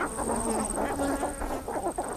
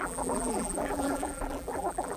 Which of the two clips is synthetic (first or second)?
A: second